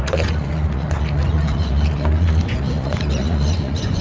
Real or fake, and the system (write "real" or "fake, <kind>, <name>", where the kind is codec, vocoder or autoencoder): fake, vocoder, Vocos